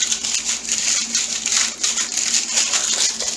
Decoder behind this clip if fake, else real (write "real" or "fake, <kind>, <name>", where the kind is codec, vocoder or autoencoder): real